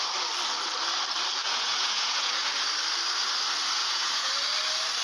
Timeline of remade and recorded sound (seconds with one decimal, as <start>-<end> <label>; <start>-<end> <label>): 0.0-1.4 recorded; 1.4-2.5 remade; 2.5-3.8 recorded; 3.8-4.3 remade; 4.3-5.0 recorded